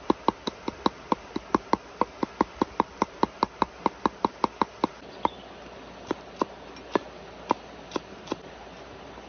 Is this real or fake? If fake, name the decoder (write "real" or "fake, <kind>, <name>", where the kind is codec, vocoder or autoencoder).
real